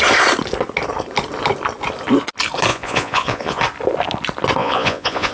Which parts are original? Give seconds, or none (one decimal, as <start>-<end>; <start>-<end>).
0.0-2.7; 3.6-4.6